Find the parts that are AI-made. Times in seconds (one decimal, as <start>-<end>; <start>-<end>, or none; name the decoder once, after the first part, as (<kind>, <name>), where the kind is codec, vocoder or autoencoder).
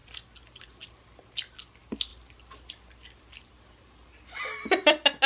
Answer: none